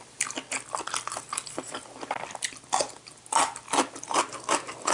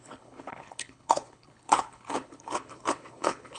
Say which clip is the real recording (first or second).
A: first